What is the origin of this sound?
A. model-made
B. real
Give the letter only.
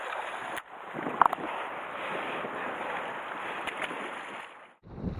B